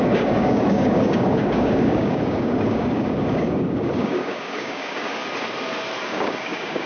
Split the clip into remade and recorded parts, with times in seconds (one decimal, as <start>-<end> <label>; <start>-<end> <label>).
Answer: 0.0-5.2 remade; 5.2-6.0 recorded; 6.0-6.9 remade